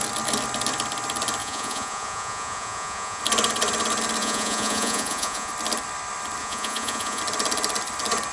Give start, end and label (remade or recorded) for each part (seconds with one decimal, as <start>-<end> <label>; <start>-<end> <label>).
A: 0.0-1.4 recorded; 1.4-3.2 remade; 3.2-4.2 recorded; 4.2-5.5 remade; 5.5-6.4 recorded; 6.4-7.2 remade; 7.2-8.3 recorded